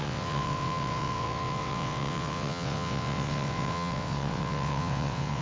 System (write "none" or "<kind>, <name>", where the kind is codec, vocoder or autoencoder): vocoder, WaveNeXt